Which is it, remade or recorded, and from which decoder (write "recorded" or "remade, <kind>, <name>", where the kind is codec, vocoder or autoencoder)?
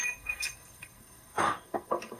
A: remade, codec, SNAC